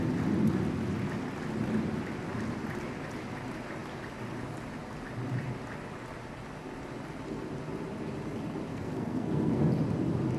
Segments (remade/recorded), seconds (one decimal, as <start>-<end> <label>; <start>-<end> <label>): 0.0-8.7 recorded; 8.7-9.7 remade; 9.7-10.4 recorded